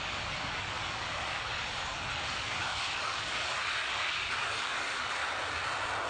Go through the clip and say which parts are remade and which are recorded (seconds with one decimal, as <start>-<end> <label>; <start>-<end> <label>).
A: 0.0-5.2 remade; 5.2-6.1 recorded